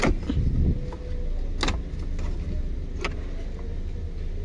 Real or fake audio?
real